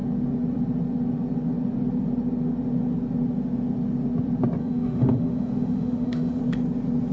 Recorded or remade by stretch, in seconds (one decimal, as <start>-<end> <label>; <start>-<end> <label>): 0.0-4.6 recorded; 4.6-6.4 remade; 6.4-7.1 recorded